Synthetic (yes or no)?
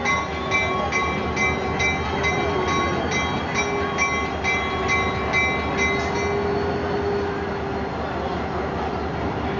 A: no